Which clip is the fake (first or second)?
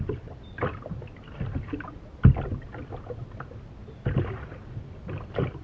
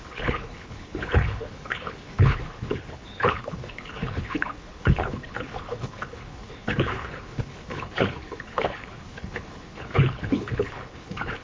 second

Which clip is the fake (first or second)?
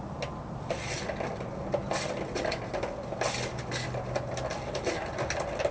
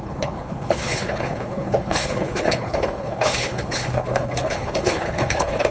second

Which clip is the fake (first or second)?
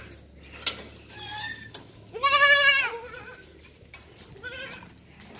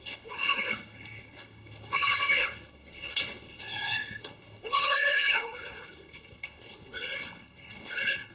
second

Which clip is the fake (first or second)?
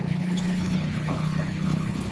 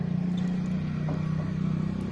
first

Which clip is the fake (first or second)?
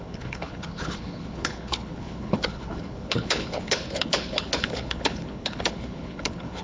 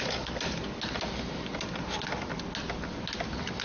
first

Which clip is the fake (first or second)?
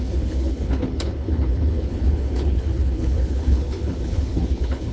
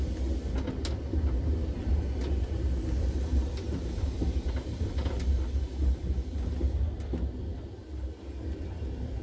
first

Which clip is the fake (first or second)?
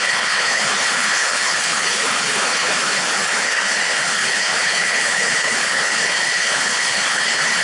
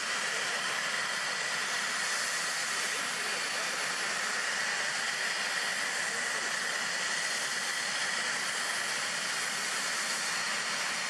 first